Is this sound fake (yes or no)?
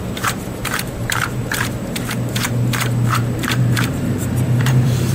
yes